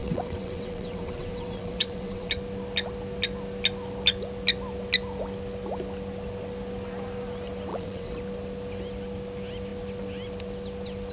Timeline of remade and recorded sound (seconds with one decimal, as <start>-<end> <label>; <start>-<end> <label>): 0.0-2.3 remade; 2.3-7.7 recorded; 7.7-8.2 remade; 8.2-11.1 recorded